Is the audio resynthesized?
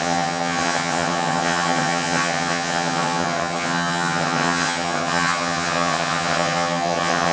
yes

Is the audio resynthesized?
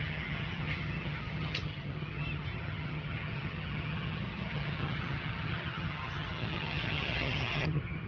yes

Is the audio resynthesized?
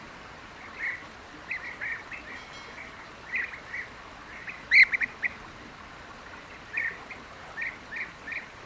no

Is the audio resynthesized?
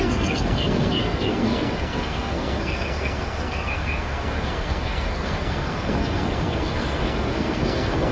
yes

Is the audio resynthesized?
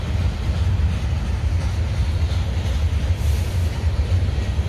no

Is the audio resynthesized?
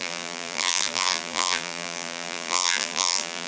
yes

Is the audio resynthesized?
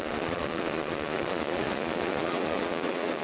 yes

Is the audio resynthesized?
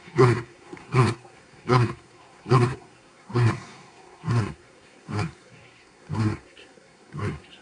yes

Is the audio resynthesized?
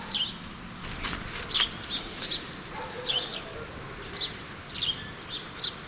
no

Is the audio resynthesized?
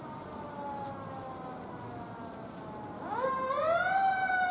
no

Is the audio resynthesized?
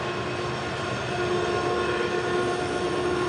no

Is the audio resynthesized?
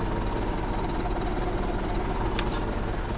no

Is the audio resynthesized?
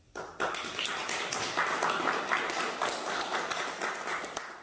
no